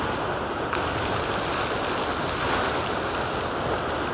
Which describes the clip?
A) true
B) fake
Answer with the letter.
A